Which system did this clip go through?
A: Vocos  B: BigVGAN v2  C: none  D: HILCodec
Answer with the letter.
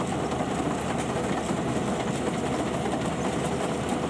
C